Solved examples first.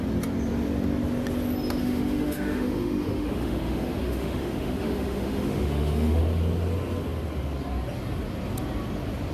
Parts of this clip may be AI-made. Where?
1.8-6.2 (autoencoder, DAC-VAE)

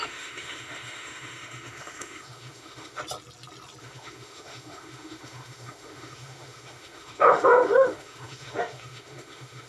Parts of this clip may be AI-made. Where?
0.0-3.0 (autoencoder, DAC-VAE); 3.8-9.7

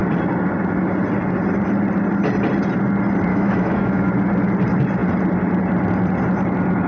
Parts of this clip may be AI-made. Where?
3.3-4.1 (autoencoder, DAC-VAE)

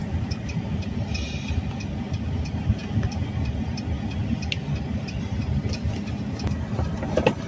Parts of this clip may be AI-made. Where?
none

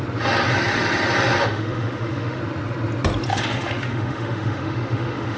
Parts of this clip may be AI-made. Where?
1.4-2.4 (autoencoder, DAC-VAE); 3.3-5.4